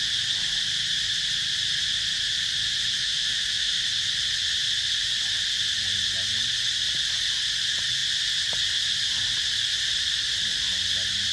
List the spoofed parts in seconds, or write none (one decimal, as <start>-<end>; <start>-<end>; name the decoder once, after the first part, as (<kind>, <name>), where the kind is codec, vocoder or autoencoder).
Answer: 3.0-3.8 (autoencoder, DAC-VAE)

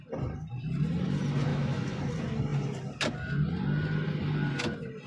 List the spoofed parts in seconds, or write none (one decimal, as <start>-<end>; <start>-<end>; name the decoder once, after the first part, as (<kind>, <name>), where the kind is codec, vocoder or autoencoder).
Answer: 1.5-2.0 (autoencoder, DAC-VAE)